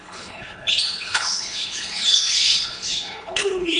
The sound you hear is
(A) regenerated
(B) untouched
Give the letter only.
A